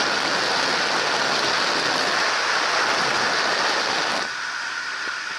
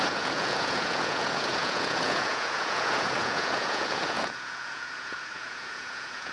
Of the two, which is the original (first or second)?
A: first